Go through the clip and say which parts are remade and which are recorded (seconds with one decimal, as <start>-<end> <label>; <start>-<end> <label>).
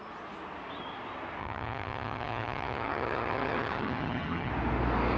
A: 0.0-1.4 recorded; 1.4-4.5 remade; 4.5-5.2 recorded